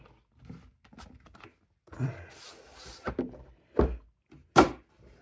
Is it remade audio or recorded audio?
recorded